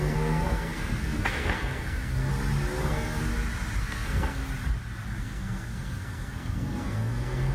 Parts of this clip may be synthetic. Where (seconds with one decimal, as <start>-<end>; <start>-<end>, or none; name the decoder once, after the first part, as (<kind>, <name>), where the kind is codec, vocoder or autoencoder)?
0.0-2.3 (codec, SNAC); 2.8-3.3; 3.8-4.4; 5.2-7.5